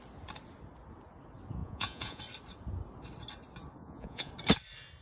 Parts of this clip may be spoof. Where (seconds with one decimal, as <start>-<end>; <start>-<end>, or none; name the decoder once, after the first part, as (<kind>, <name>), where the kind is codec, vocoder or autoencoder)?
1.6-2.2 (vocoder, Vocos); 3.8-4.3